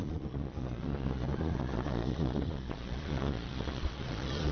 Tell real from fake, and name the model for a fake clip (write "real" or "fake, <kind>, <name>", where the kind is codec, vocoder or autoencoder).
fake, vocoder, Vocos